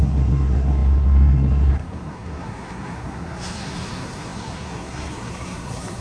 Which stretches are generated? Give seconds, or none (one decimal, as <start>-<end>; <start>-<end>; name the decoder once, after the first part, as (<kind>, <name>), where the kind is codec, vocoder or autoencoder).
0.0-6.0 (codec, SNAC)

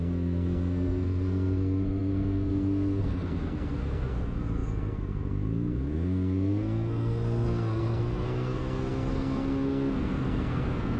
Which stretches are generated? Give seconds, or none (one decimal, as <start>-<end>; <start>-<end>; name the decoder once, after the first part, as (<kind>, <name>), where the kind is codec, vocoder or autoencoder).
0.0-11.0 (codec, SNAC)

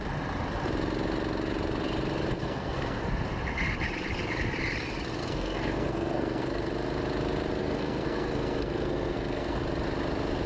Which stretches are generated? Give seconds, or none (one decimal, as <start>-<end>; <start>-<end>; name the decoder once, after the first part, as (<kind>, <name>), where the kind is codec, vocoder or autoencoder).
2.3-3.1 (codec, SNAC); 5.2-6.7; 7.6-9.6

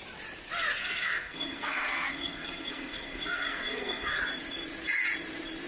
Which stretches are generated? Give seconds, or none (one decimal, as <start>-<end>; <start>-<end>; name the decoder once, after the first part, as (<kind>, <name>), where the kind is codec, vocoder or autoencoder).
0.8-4.2 (codec, SNAC)

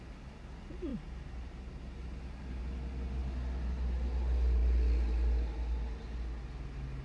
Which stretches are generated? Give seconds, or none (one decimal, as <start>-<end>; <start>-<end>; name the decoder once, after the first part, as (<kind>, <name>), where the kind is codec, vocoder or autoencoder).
none